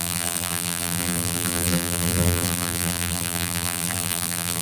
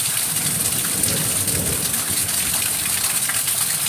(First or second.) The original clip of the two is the second